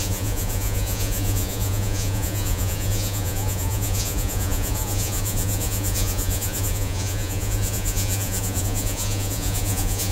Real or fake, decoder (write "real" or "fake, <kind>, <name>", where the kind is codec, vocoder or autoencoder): fake, vocoder, Vocos